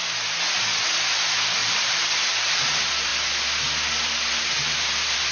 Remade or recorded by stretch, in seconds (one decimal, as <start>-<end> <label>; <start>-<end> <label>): 0.0-1.6 recorded; 1.6-2.5 remade; 2.5-5.3 recorded